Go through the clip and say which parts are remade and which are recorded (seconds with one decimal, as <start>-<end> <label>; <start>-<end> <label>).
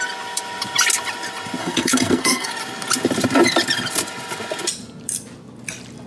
0.0-1.6 recorded; 1.6-2.5 remade; 2.5-6.1 recorded